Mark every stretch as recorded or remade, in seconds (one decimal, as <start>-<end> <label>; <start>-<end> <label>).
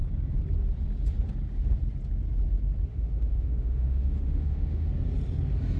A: 0.0-2.9 recorded; 2.9-4.9 remade; 4.9-5.8 recorded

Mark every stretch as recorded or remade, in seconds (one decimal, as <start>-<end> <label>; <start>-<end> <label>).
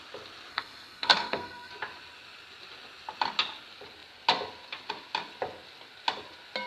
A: 0.0-0.5 recorded; 0.5-1.7 remade; 1.7-6.7 recorded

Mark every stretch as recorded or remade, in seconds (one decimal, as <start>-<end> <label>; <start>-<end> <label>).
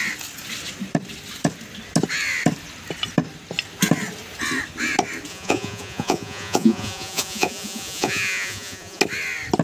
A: 0.0-5.3 recorded; 5.3-9.0 remade; 9.0-9.6 recorded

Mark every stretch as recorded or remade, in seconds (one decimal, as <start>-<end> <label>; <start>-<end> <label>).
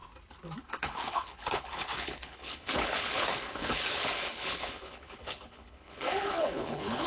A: 0.0-0.6 recorded; 0.6-7.1 remade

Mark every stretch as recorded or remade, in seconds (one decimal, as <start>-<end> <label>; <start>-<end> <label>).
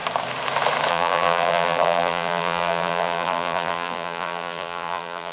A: 0.0-0.9 recorded; 0.9-5.3 remade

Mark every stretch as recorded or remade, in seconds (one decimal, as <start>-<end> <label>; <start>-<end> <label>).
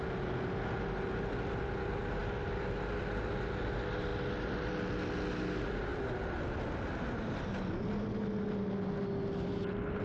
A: 0.0-2.2 recorded; 2.2-3.2 remade; 3.2-4.1 recorded; 4.1-4.7 remade; 4.7-10.0 recorded